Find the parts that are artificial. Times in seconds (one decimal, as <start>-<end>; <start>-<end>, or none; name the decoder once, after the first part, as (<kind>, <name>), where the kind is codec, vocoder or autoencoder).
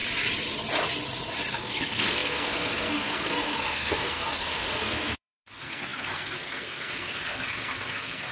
1.5-8.3 (codec, SNAC)